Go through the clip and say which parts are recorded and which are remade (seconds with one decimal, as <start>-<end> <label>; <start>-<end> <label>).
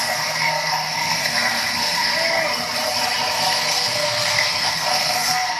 0.0-2.1 remade; 2.1-3.3 recorded; 3.3-5.6 remade